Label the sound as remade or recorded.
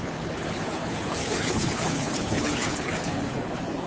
remade